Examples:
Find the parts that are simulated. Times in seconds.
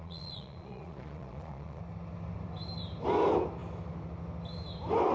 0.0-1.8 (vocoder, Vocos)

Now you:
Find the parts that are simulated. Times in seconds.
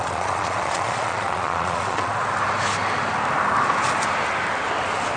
0.0-2.1 (vocoder, Vocos)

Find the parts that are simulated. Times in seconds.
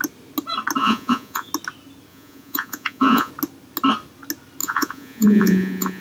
0.8-1.5 (vocoder, Vocos); 2.1-3.3; 4.6-6.0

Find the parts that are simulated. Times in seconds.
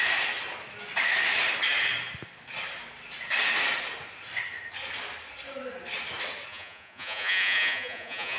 6.5-8.4 (vocoder, Vocos)